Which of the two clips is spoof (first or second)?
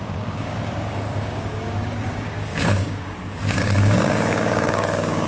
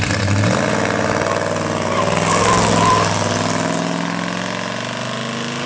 first